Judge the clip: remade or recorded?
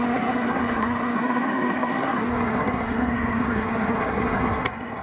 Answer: remade